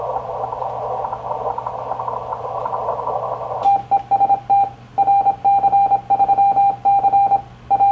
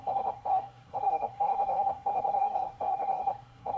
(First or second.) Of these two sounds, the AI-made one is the second